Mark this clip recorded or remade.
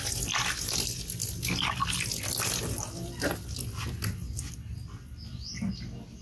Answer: recorded